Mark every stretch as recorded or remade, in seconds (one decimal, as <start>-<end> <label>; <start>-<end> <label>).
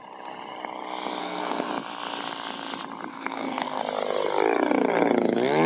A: 0.0-1.2 recorded; 1.2-1.7 remade; 1.7-3.1 recorded; 3.1-3.8 remade; 3.8-5.7 recorded